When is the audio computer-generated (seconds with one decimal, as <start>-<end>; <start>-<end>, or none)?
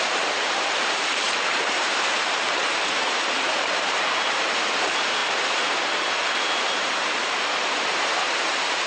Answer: 0.0-5.2; 6.6-8.9